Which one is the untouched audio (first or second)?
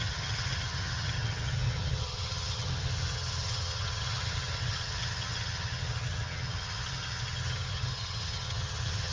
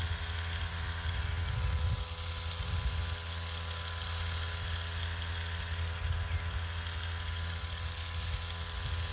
second